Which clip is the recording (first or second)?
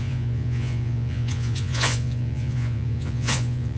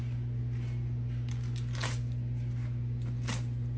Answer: second